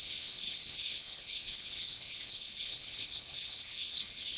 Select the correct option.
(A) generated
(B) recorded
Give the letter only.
A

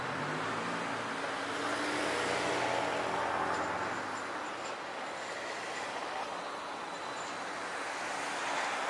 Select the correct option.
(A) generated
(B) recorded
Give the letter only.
B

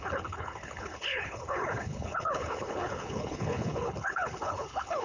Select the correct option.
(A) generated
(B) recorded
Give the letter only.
A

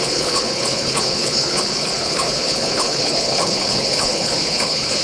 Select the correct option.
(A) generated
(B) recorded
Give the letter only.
A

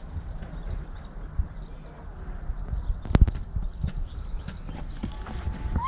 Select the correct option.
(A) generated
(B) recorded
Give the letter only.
B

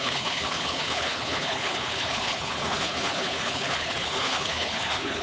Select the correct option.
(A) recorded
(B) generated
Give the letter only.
B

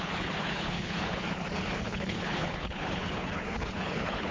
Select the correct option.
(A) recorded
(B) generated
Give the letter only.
B